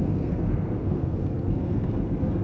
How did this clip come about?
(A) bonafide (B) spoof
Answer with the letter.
B